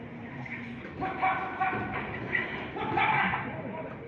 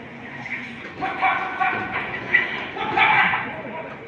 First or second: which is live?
first